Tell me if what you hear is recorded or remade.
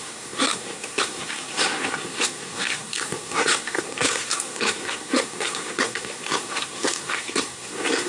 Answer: remade